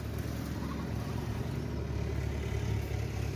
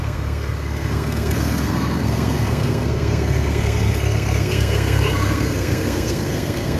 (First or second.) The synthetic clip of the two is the second